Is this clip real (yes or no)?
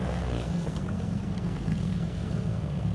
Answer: no